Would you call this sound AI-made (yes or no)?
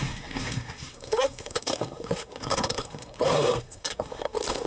yes